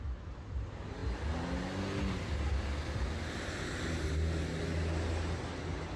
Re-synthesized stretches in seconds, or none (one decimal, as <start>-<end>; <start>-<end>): none